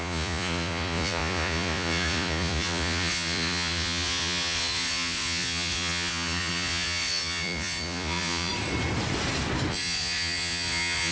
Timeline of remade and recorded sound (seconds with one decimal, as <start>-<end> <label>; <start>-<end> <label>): 0.0-8.5 remade; 8.5-9.7 recorded; 9.7-11.1 remade